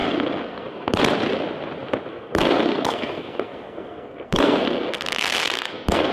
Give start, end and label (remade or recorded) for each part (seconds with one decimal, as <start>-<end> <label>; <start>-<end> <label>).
0.0-1.0 remade; 1.0-2.1 recorded; 2.1-6.1 remade